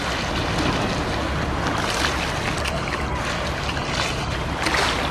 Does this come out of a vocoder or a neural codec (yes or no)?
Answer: no